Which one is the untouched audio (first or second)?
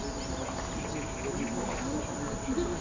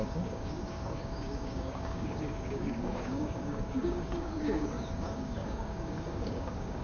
first